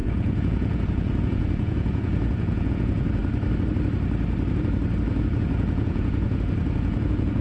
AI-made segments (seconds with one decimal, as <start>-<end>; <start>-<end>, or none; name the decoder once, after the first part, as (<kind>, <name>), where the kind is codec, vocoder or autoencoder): 0.0-3.2 (vocoder, Vocos); 5.3-7.4